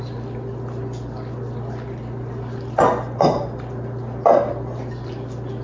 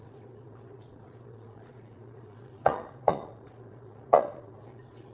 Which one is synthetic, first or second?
second